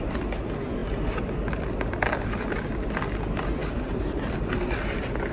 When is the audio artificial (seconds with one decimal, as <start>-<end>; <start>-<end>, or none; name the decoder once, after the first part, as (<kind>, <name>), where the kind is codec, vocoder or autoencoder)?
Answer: none